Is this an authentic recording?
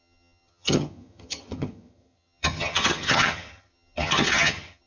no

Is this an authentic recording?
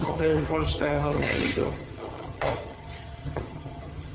no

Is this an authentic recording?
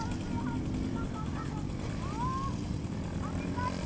yes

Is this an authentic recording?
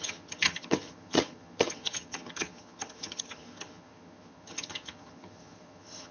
no